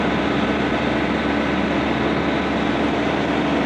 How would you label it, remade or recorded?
recorded